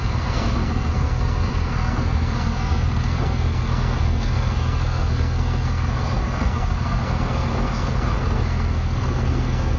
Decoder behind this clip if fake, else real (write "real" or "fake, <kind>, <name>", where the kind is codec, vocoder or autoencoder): fake, codec, SNAC